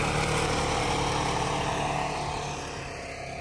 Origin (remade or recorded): recorded